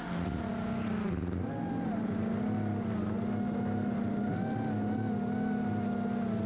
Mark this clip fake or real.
real